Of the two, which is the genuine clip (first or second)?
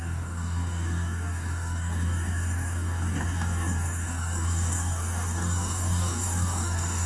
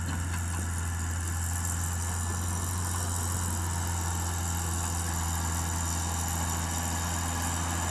second